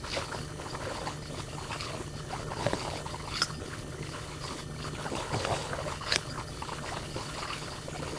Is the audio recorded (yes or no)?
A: no